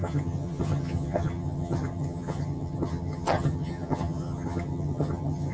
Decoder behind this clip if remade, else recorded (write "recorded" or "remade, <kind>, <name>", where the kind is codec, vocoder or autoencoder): remade, vocoder, HiFi-GAN